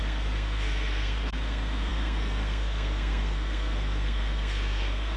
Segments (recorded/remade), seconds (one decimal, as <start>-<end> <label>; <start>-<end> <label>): 0.0-5.2 remade